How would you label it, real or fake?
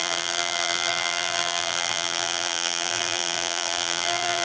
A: fake